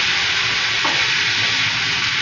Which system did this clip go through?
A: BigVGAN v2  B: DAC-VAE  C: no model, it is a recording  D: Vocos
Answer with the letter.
C